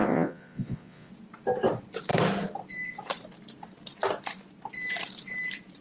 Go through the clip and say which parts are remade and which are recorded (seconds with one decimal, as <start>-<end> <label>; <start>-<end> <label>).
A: 0.0-1.1 remade; 1.1-5.8 recorded

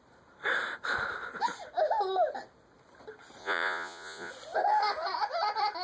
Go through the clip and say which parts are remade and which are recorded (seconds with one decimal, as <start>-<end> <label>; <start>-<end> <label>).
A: 0.0-3.4 recorded; 3.4-4.3 remade; 4.3-5.8 recorded

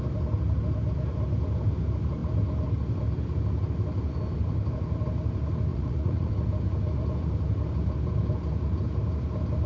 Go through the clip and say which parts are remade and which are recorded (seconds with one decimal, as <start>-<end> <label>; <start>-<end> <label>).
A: 0.0-5.7 recorded; 5.7-6.3 remade; 6.3-9.7 recorded

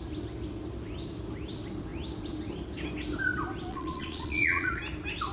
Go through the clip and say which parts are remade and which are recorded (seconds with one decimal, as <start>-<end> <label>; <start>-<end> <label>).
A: 0.0-3.7 recorded; 3.7-4.8 remade; 4.8-5.3 recorded

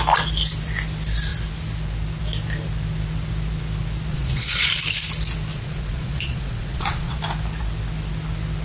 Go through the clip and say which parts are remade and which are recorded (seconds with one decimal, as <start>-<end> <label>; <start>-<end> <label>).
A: 0.0-4.1 recorded; 4.1-4.7 remade; 4.7-5.5 recorded; 5.5-7.2 remade; 7.2-8.6 recorded

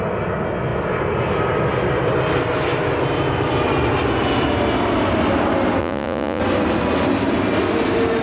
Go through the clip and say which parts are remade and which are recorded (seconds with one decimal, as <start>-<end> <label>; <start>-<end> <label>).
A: 0.0-5.8 recorded; 5.8-6.4 remade; 6.4-8.2 recorded

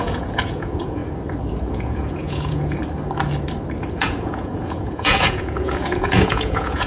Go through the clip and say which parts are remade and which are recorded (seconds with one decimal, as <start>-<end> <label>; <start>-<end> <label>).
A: 0.0-1.0 remade; 1.0-1.6 recorded; 1.6-2.8 remade; 2.8-3.9 recorded; 3.9-6.9 remade